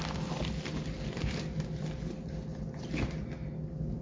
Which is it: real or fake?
real